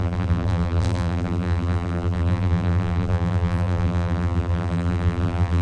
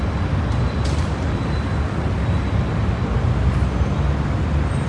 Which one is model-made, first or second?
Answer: first